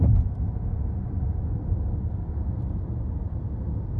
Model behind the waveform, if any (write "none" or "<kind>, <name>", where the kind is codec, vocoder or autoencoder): none